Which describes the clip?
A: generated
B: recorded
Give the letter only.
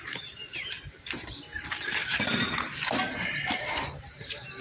A